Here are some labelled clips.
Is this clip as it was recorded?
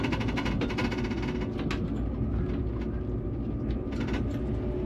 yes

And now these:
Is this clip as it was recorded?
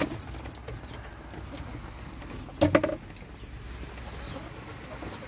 yes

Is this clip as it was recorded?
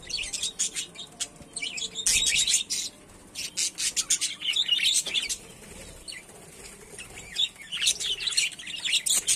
yes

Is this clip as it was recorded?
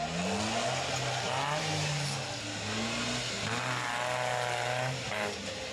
yes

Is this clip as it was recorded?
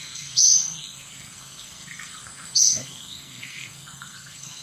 no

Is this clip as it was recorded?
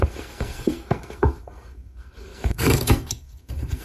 no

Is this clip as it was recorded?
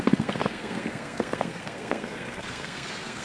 no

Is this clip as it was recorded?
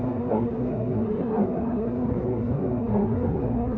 no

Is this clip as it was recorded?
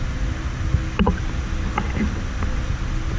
yes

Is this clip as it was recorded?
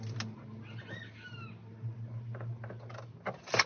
yes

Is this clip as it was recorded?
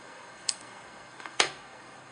no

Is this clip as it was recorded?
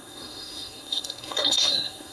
no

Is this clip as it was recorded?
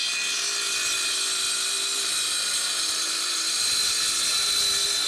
yes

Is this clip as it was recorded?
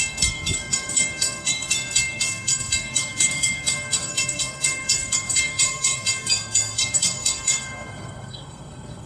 no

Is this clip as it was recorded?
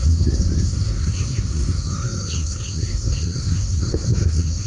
no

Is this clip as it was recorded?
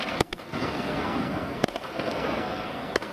no